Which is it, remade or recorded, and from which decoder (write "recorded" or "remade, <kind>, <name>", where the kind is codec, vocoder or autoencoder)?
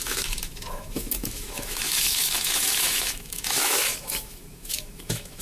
remade, autoencoder, DAC-VAE